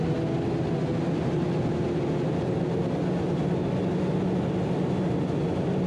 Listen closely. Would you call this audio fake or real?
real